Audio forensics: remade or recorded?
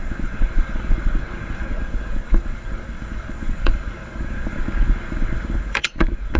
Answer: remade